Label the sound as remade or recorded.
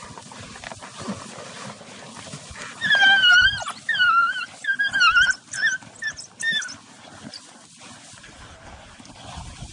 recorded